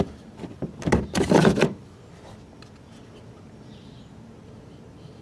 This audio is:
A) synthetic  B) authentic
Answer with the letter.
B